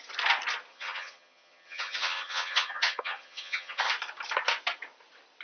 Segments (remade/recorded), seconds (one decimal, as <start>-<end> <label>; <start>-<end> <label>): 0.0-0.7 recorded; 0.7-3.9 remade; 3.9-5.4 recorded